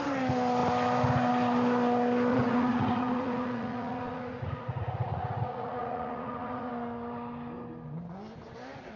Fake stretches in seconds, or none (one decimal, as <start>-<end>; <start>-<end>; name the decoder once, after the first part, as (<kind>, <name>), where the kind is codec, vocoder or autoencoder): 2.3-6.7 (vocoder, Vocos)